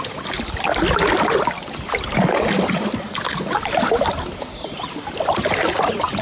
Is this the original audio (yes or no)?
yes